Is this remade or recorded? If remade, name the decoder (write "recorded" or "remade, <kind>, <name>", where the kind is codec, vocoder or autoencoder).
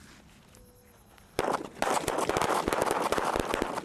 recorded